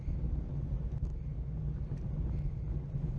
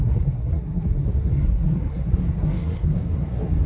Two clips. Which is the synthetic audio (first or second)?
second